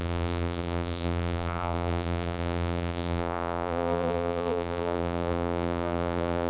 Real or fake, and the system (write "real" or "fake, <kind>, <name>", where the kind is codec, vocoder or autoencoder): fake, vocoder, BigVGAN v2